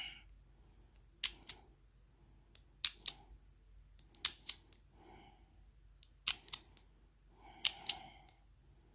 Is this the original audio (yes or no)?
yes